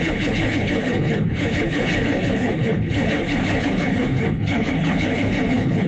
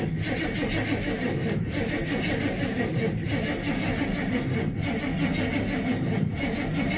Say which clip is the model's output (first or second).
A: first